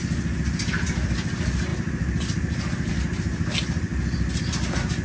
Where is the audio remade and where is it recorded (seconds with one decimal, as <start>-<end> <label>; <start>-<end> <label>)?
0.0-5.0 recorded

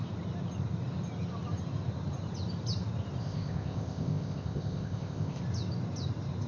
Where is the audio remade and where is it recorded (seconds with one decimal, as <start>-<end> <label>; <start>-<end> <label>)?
0.0-3.2 recorded; 3.2-5.4 remade; 5.4-6.5 recorded

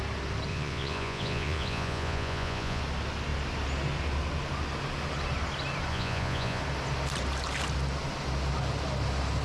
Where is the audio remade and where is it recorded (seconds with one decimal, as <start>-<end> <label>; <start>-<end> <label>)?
0.0-0.5 recorded; 0.5-2.8 remade; 2.8-5.9 recorded; 5.9-6.6 remade; 6.6-9.4 recorded

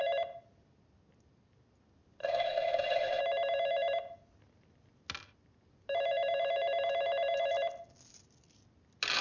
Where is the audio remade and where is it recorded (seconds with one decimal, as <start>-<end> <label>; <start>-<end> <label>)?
0.0-2.2 recorded; 2.2-3.2 remade; 3.2-9.2 recorded

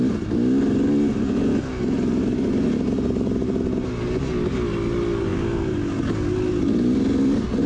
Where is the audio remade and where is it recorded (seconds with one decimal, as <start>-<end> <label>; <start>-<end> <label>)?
0.0-7.7 recorded